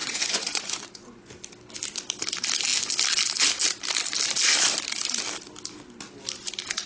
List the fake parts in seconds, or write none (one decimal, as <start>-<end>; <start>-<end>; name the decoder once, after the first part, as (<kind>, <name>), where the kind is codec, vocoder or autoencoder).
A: 0.0-1.3 (vocoder, Vocos)